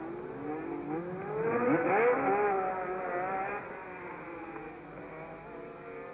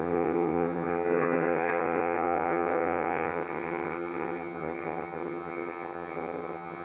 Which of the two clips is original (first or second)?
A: first